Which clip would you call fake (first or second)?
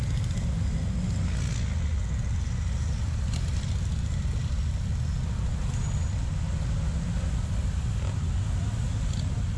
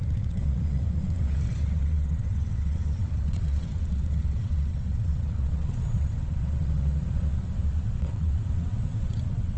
second